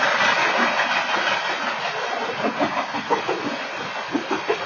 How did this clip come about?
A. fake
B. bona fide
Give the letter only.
B